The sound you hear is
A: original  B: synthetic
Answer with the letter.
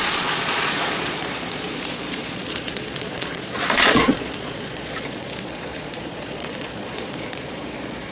B